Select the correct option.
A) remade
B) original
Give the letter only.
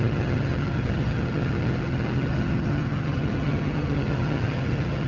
A